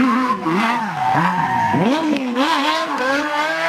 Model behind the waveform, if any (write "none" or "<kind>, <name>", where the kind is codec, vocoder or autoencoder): codec, SNAC